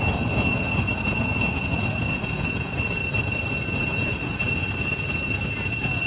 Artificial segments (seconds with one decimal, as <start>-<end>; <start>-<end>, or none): 0.0-3.0; 3.6-6.1